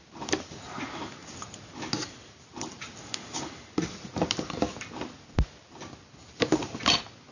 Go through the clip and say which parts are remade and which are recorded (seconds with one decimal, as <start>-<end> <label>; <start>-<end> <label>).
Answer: 0.0-7.3 recorded